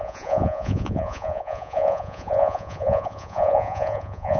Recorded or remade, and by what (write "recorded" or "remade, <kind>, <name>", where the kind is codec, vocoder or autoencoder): remade, vocoder, Vocos